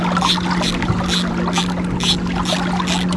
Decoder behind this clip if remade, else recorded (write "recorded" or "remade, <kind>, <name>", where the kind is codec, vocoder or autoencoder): recorded